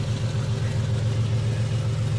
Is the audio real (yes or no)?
yes